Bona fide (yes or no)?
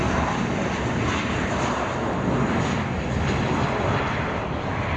yes